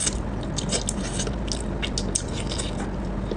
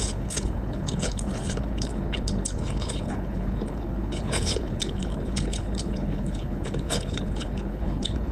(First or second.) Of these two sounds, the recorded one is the first